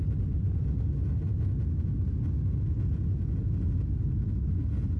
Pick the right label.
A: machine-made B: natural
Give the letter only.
B